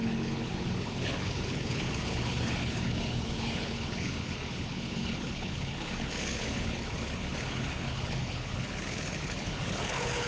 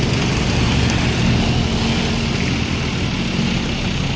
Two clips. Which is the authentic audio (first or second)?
second